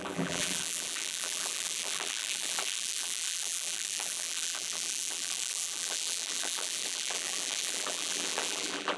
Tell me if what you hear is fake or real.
fake